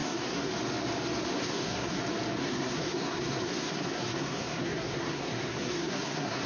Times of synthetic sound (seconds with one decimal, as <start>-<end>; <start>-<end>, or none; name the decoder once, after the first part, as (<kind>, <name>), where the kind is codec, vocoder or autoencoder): 0.0-0.5 (codec, SNAC); 1.3-2.0; 2.4-6.5

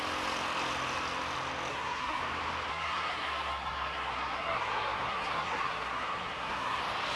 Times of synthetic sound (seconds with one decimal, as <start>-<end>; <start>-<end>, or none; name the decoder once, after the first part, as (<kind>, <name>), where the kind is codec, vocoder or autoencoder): 1.7-2.2 (codec, SNAC); 2.7-6.8

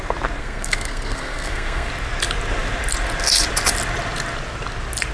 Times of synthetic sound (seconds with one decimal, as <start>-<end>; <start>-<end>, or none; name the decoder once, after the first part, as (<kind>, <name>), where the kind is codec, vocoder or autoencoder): 0.4-1.9 (codec, SNAC)

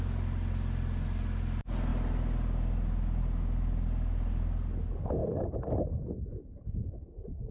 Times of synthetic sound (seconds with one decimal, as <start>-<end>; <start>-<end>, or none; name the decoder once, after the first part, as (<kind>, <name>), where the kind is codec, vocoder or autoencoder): none

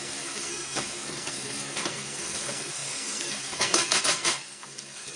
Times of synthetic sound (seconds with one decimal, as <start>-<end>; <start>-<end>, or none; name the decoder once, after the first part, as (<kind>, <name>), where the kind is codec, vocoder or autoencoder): 0.0-5.2 (codec, SNAC)

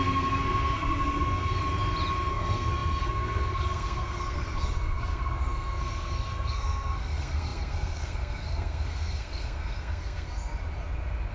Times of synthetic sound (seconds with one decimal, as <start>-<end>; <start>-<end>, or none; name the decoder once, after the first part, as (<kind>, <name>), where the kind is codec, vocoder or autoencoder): 0.0-1.6 (codec, SNAC); 2.3-10.5

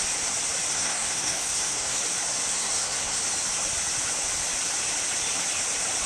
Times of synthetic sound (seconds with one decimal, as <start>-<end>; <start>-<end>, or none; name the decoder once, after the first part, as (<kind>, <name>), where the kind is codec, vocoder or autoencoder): 0.7-2.0 (codec, SNAC); 2.5-3.2